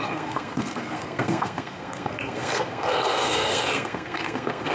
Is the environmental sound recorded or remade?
remade